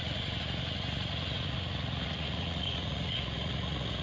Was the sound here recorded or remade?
remade